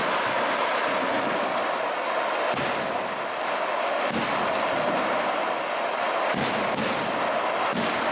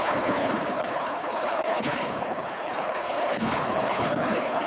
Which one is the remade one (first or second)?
second